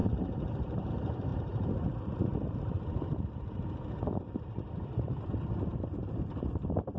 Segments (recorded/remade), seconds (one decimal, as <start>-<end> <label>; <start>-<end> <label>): 0.0-0.9 remade; 0.9-1.3 recorded; 1.3-5.5 remade; 5.5-7.0 recorded